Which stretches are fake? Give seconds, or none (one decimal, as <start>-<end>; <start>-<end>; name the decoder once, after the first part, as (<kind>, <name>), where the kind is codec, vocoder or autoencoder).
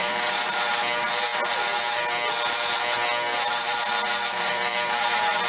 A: 0.0-0.7 (vocoder, BigVGAN v2); 3.3-5.5